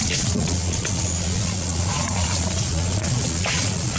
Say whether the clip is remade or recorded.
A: remade